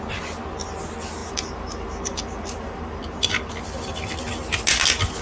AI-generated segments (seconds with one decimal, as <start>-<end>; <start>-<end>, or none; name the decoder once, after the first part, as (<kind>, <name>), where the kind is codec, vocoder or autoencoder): 1.2-3.5 (vocoder, BigVGAN v2)